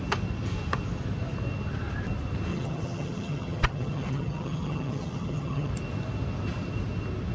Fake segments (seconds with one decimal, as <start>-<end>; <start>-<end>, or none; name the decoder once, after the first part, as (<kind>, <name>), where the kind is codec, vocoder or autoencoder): 2.5-5.7 (vocoder, HiFi-GAN)